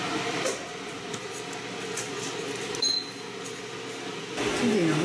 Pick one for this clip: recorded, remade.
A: recorded